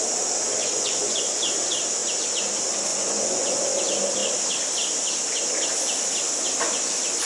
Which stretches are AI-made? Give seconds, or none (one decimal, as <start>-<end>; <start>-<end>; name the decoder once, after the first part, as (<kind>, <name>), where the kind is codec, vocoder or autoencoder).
0.6-1.4 (vocoder, Vocos); 2.9-3.6